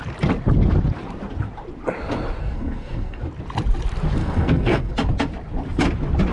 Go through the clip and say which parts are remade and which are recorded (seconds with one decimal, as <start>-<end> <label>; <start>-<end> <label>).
0.0-2.4 recorded; 2.4-3.2 remade; 3.2-4.2 recorded; 4.2-4.9 remade; 4.9-6.3 recorded